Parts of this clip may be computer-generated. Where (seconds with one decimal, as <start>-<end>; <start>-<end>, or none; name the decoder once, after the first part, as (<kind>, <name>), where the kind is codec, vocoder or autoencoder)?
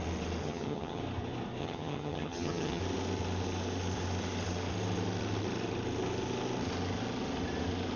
0.4-1.0 (vocoder, HiFi-GAN); 1.6-2.8